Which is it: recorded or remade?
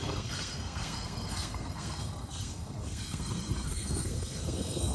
remade